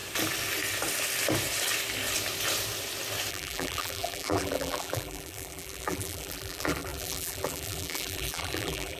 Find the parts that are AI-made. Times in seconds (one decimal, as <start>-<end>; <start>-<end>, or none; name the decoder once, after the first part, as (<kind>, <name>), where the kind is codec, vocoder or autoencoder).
3.3-9.0 (vocoder, BigVGAN v2)